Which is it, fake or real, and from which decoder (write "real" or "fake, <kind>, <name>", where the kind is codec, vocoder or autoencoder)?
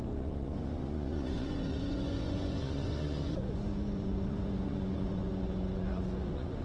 fake, vocoder, Vocos